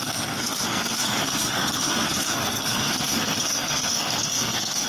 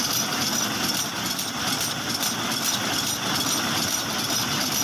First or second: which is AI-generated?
first